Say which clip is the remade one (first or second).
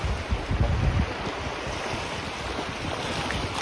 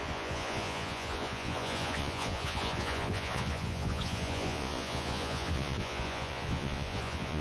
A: second